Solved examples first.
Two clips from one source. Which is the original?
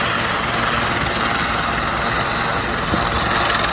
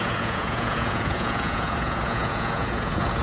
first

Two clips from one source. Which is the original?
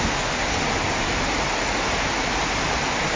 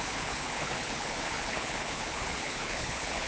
first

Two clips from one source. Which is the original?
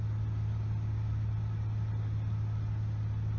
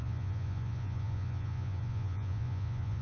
first